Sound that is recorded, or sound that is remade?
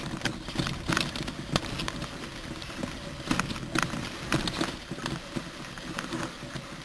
recorded